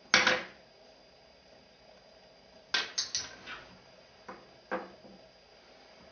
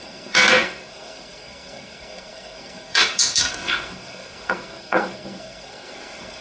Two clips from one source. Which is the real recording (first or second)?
first